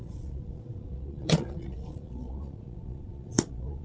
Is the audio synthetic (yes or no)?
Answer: yes